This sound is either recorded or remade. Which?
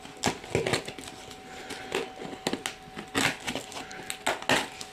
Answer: recorded